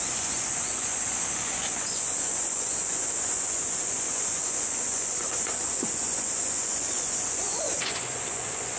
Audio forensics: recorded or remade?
remade